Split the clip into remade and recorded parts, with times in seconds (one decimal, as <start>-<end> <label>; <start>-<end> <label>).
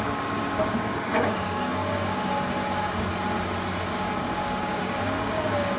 0.0-2.6 remade; 2.6-3.9 recorded; 3.9-5.8 remade